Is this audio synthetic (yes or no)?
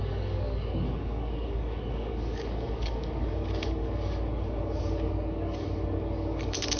yes